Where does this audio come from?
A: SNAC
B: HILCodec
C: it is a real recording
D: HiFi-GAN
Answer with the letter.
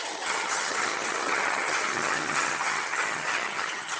D